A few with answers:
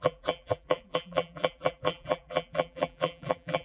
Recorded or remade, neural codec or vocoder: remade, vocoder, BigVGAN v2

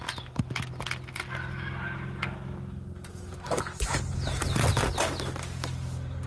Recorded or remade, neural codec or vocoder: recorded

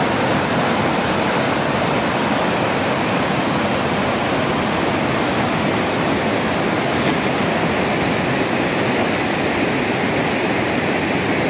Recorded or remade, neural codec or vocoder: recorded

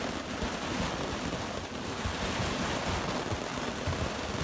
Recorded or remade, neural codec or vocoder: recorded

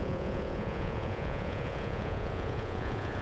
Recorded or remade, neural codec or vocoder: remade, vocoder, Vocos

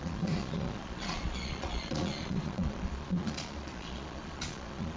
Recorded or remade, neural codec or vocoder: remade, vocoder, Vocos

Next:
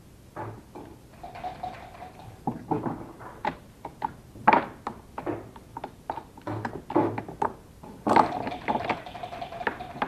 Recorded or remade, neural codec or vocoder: recorded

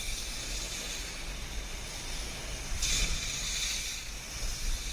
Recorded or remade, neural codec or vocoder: recorded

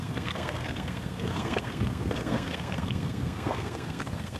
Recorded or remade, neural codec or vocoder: remade, codec, SNAC